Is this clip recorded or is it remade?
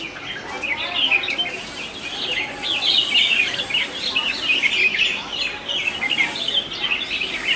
recorded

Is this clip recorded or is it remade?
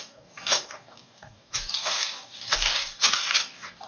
remade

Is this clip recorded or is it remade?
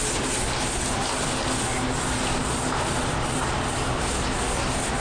recorded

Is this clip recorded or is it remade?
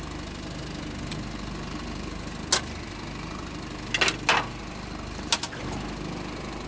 recorded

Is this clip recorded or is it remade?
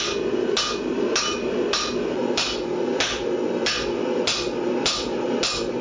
recorded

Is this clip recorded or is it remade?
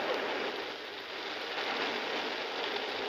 recorded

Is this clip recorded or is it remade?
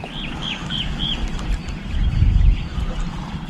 recorded